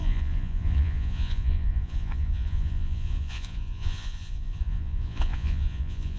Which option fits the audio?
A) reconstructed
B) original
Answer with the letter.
A